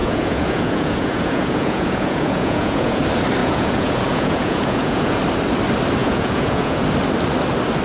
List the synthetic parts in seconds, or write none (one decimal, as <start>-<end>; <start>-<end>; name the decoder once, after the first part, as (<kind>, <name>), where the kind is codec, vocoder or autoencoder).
0.0-3.0 (vocoder, Vocos); 3.4-5.2; 6.0-6.8